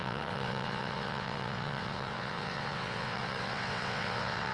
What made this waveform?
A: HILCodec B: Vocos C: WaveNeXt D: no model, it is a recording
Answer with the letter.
C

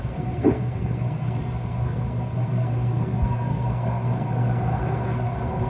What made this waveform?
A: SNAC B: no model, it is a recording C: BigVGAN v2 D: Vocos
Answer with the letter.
A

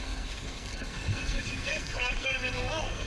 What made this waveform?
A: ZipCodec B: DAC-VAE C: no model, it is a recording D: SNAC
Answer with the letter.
D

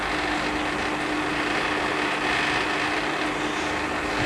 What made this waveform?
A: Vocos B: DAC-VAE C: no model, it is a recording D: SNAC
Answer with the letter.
C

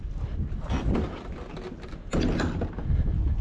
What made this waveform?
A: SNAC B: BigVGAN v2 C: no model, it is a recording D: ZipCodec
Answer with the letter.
C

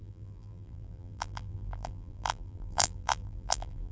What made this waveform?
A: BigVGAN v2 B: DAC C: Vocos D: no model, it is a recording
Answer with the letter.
A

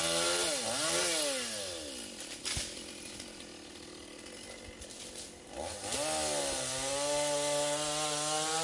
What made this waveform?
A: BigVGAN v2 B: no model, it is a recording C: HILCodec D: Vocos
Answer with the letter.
B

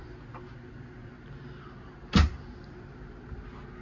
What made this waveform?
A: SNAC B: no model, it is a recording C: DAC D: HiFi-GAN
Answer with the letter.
B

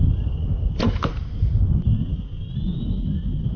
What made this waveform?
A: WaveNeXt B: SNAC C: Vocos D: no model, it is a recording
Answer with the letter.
D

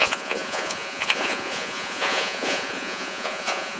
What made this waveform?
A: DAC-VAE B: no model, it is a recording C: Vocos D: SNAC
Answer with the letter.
C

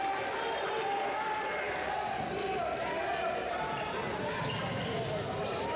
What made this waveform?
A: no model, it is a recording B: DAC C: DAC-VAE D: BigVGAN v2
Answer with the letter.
A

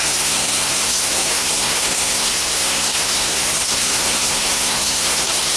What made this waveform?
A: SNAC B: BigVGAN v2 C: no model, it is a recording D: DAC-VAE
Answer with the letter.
A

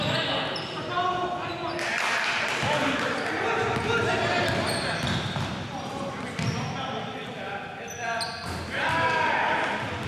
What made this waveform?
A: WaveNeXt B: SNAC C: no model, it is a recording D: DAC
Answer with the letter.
C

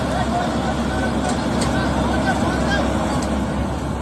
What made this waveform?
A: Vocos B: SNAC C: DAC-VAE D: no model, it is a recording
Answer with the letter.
D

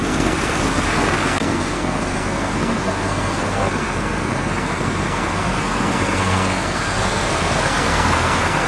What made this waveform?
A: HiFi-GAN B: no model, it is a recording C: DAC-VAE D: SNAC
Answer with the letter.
D